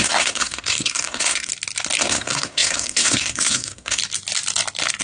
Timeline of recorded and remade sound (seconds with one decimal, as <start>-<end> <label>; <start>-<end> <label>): 0.0-1.5 remade; 1.5-2.0 recorded; 2.0-4.0 remade; 4.0-5.0 recorded